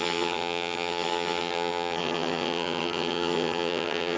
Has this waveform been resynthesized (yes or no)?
yes